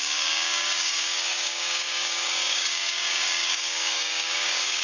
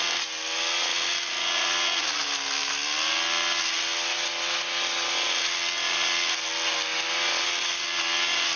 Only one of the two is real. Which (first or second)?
second